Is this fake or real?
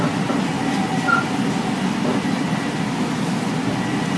real